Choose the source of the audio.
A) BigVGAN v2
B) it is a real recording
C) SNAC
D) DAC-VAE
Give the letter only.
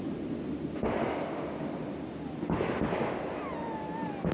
B